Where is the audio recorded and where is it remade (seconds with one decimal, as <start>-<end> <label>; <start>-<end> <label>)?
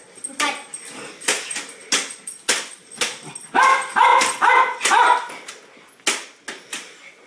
0.0-7.3 recorded